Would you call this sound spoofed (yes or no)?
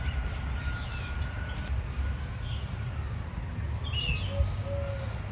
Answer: no